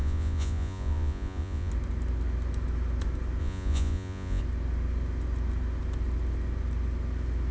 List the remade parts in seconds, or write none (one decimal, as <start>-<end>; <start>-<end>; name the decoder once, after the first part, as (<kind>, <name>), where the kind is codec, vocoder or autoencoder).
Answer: 0.0-1.7 (vocoder, Vocos); 3.4-4.4